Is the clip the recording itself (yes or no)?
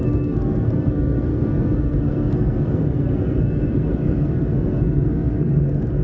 no